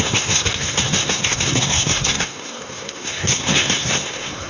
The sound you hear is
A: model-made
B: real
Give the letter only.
A